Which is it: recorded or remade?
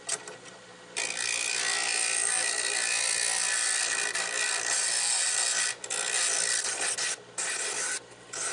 recorded